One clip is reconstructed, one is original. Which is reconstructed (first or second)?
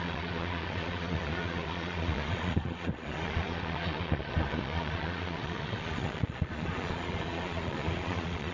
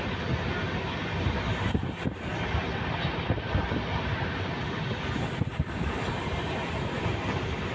first